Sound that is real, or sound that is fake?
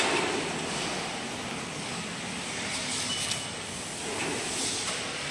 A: real